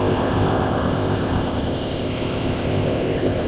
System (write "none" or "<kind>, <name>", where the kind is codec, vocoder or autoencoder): codec, ZipCodec